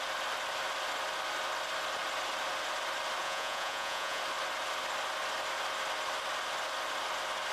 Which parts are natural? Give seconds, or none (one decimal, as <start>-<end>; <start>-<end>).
0.0-3.2; 4.2-7.5